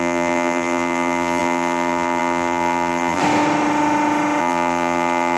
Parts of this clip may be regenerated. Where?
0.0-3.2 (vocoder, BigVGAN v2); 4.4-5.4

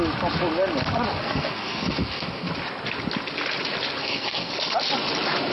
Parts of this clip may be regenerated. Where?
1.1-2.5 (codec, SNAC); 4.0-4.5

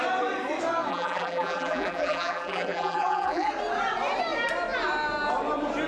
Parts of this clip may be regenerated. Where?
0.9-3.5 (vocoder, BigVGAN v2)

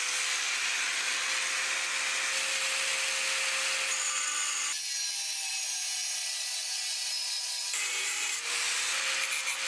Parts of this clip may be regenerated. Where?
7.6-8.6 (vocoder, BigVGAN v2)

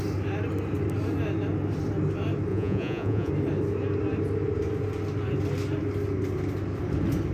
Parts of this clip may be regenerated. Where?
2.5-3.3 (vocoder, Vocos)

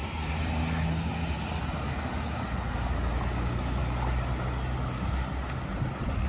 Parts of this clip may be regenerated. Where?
none